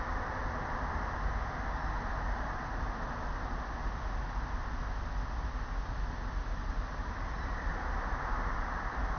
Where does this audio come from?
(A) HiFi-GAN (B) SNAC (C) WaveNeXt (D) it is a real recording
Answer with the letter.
D